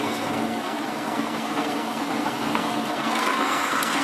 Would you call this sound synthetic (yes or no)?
yes